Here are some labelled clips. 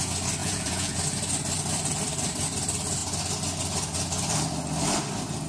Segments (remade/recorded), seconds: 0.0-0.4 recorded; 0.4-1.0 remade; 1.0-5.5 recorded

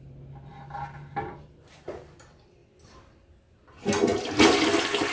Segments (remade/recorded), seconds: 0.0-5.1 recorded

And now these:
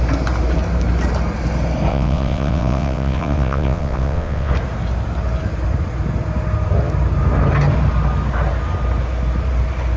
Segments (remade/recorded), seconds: 0.0-1.9 recorded; 1.9-4.5 remade; 4.5-10.0 recorded

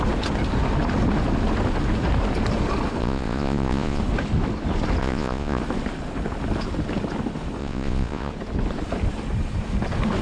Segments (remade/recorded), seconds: 0.0-3.0 recorded; 3.0-4.0 remade; 4.0-5.0 recorded; 5.0-5.6 remade; 5.6-7.6 recorded; 7.6-8.3 remade; 8.3-10.2 recorded

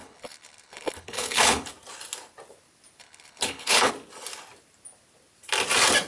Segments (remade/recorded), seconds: 0.0-1.7 remade; 1.7-3.0 recorded; 3.0-3.9 remade; 3.9-6.1 recorded

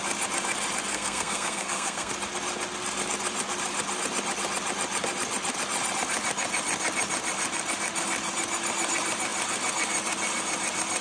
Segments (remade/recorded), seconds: 0.0-0.9 recorded; 0.9-2.1 remade; 2.1-11.0 recorded